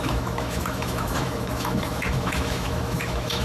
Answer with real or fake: fake